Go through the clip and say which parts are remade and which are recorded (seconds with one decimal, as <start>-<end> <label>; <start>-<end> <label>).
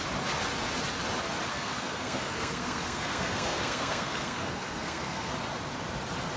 0.0-1.5 recorded; 1.5-5.3 remade; 5.3-6.4 recorded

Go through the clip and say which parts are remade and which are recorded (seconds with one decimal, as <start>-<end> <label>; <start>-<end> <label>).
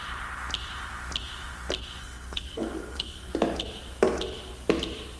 0.0-2.0 recorded; 2.0-3.3 remade; 3.3-5.2 recorded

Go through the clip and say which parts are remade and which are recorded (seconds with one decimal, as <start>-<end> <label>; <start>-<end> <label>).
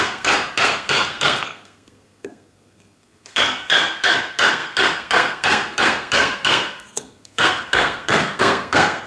0.0-9.1 remade